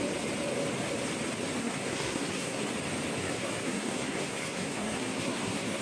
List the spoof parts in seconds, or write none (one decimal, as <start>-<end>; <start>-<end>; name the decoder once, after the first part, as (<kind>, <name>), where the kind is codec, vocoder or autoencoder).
1.6-2.7 (codec, SNAC); 3.2-5.8